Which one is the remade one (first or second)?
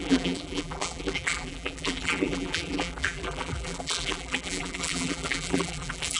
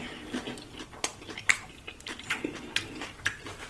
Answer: first